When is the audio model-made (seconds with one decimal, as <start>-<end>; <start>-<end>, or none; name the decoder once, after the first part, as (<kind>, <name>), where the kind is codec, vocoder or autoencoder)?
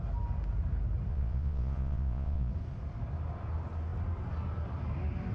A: 1.1-2.5 (vocoder, Vocos)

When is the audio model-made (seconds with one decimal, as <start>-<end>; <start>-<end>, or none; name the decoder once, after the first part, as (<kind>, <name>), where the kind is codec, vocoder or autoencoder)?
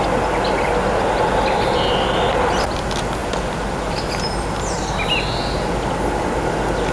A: none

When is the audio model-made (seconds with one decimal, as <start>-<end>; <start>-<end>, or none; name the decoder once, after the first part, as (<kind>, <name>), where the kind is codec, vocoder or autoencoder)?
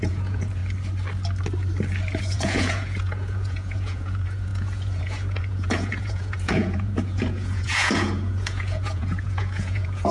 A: 0.0-0.6 (vocoder, Vocos); 2.2-10.1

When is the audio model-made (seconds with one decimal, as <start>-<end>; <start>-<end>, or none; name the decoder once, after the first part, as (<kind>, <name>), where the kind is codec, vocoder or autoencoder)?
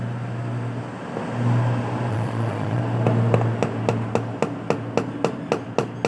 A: 2.1-2.8 (vocoder, Vocos)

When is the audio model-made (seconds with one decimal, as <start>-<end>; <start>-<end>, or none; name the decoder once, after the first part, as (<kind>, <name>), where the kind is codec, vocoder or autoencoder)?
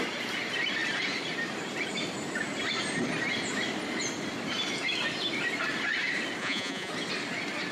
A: 6.4-6.9 (vocoder, Vocos)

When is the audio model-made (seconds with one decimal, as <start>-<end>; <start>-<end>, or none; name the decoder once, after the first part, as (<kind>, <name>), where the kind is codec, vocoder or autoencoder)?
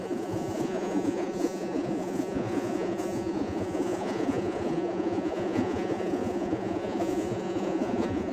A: 0.0-8.3 (vocoder, Vocos)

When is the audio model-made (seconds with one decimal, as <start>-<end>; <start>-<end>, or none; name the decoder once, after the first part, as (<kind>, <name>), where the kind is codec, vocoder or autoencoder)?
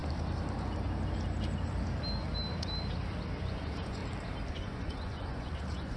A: 3.4-4.0 (vocoder, Vocos); 4.5-6.0